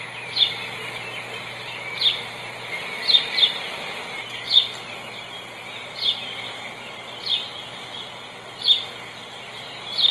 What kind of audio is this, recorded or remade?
recorded